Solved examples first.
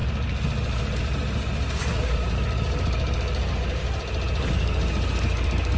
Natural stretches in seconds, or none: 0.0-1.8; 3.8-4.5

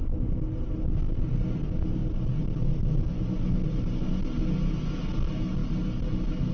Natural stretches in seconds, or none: 0.0-6.5

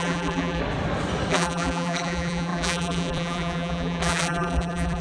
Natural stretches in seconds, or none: 0.6-1.3

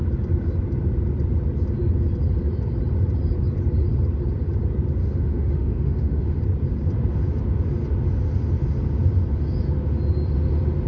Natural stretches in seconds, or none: 0.0-5.0; 6.4-10.9

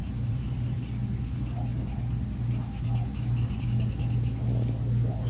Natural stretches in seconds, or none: 0.9-5.3

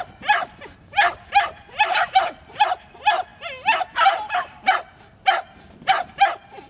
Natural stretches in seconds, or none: none